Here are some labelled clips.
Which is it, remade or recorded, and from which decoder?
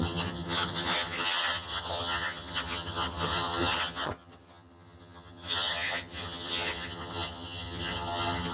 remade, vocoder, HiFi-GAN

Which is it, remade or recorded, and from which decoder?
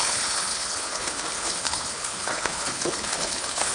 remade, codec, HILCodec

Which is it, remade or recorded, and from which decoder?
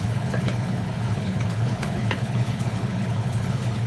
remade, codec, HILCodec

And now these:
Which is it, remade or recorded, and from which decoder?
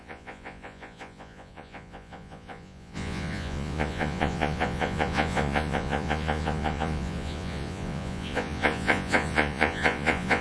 remade, vocoder, Vocos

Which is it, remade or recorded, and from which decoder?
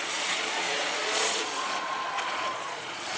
remade, vocoder, Vocos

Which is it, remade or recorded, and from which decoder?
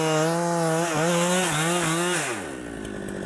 recorded